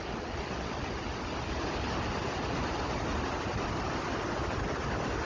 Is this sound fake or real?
real